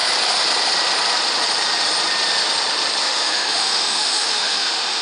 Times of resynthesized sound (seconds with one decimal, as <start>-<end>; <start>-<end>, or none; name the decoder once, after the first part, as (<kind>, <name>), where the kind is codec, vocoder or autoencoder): 3.0-5.0 (autoencoder, DAC-VAE)